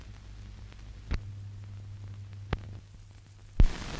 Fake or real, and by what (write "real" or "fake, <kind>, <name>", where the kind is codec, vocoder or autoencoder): real